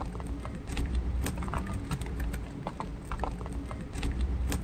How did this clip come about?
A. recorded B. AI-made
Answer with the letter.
B